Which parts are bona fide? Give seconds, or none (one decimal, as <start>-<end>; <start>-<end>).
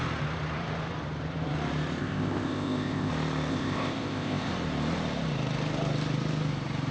0.0-2.0; 3.1-3.5; 4.5-6.9